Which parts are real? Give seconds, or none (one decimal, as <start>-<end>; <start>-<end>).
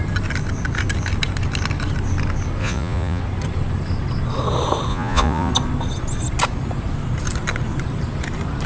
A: 0.0-2.6; 3.2-4.9; 5.5-8.7